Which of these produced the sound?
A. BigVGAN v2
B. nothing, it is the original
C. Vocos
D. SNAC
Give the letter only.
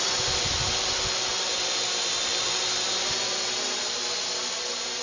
B